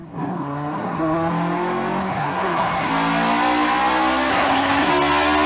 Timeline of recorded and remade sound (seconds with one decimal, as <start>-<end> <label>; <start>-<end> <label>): 0.0-1.3 remade; 1.3-2.0 recorded; 2.0-2.9 remade; 2.9-4.3 recorded; 4.3-4.9 remade; 4.9-5.5 recorded